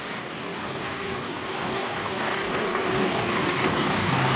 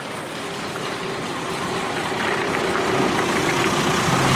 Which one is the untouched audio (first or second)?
second